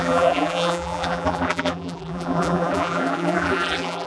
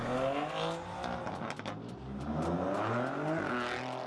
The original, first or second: second